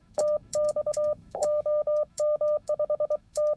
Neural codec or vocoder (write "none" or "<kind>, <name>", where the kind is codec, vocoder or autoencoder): autoencoder, DAC-VAE